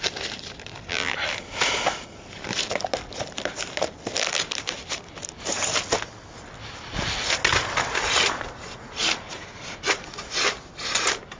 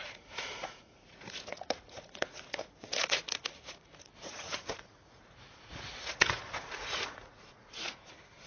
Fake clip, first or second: second